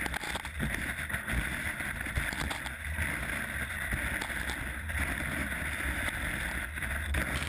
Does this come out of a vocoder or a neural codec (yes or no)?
no